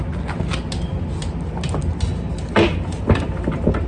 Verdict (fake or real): real